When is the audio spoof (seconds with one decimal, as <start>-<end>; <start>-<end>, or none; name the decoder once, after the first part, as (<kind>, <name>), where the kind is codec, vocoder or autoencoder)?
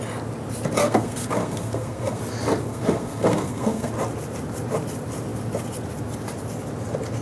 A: 0.8-2.2 (codec, SNAC); 2.7-3.9